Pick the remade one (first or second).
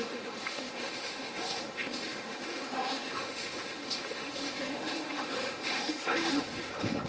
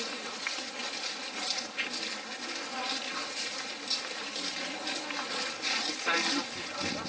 first